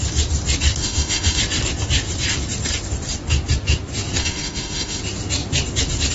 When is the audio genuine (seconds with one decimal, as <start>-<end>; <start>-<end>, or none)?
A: 0.0-0.8; 1.4-4.2; 5.0-6.1